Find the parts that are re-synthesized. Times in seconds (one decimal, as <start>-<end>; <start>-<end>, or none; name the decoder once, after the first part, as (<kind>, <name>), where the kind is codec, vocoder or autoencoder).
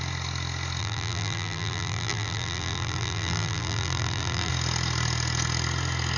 0.8-4.5 (vocoder, BigVGAN v2)